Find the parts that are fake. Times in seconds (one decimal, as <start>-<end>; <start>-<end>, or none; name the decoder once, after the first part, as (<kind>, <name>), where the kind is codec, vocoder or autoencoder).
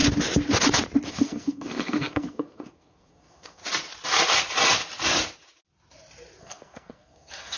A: 1.1-3.6 (codec, SNAC); 6.4-7.6